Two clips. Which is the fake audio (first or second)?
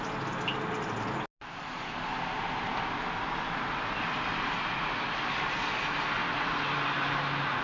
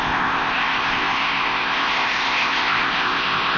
second